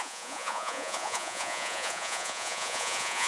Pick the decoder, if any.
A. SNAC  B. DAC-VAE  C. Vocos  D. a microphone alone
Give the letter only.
C